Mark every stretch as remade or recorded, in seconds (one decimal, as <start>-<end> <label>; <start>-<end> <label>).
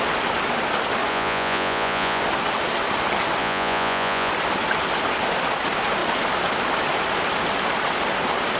0.0-1.1 recorded; 1.1-2.2 remade; 2.2-3.4 recorded; 3.4-4.3 remade; 4.3-8.6 recorded